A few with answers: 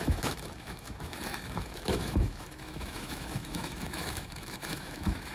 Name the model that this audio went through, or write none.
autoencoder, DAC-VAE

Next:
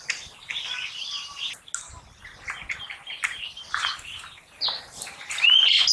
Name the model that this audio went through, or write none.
none